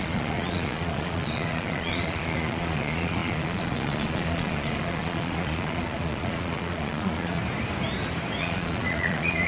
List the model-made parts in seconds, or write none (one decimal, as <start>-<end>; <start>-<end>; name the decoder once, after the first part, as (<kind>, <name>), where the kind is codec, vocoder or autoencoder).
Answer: 0.0-7.4 (vocoder, Vocos); 8.4-9.5